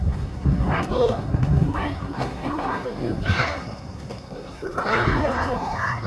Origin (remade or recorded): remade